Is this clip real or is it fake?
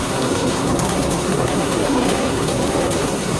fake